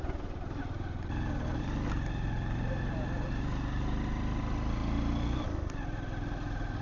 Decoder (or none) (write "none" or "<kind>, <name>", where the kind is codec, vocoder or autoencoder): none